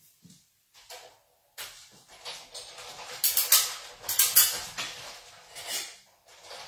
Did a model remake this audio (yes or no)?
no